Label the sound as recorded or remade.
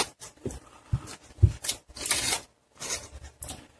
recorded